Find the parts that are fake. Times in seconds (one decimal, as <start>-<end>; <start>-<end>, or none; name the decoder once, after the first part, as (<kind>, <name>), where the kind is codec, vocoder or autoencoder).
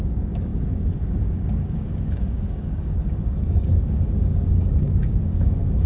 0.0-5.9 (codec, DAC)